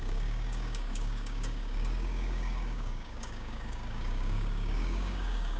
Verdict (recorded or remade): remade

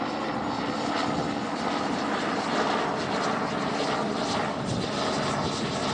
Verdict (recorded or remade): recorded